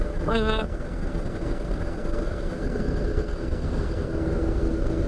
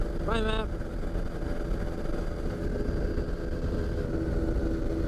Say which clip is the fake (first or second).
first